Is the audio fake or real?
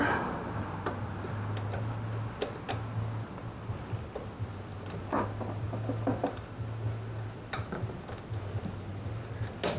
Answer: real